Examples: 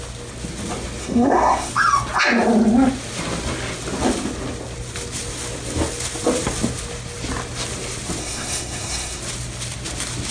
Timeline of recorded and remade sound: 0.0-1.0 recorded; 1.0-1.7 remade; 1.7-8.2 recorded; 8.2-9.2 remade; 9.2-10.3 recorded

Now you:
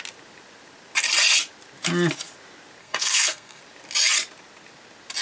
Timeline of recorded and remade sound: 0.0-2.8 recorded; 2.8-3.6 remade; 3.6-5.2 recorded